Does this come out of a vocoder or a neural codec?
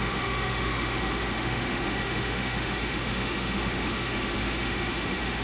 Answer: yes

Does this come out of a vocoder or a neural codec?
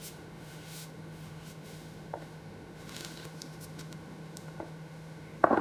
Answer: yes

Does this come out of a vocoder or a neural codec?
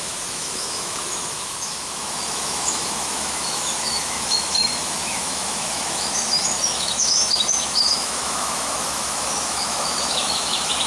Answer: yes